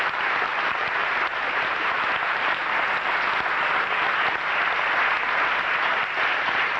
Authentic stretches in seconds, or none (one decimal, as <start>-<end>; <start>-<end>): 2.6-6.8